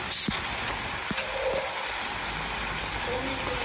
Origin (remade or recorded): recorded